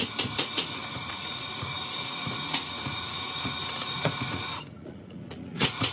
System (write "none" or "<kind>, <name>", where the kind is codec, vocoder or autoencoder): vocoder, Vocos